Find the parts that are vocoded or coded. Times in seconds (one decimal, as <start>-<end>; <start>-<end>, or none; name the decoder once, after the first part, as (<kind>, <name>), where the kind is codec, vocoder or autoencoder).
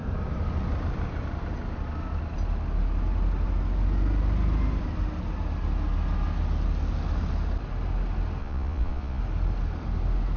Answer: 8.4-9.2 (vocoder, Vocos)